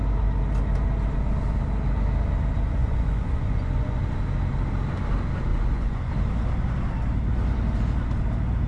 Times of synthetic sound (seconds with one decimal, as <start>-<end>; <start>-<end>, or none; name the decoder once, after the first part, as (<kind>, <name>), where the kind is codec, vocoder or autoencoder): 2.8-4.0 (vocoder, Vocos); 5.5-6.1